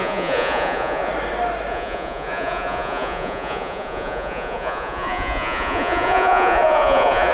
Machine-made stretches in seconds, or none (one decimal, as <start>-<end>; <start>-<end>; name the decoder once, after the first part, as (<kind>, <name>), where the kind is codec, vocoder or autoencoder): 0.0-1.1 (vocoder, Vocos); 1.7-7.3